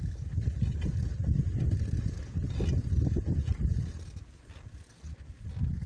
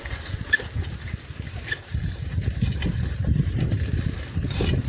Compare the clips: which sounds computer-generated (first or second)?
second